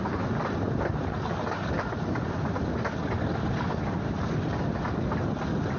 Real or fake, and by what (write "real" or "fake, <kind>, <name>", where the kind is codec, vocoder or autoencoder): real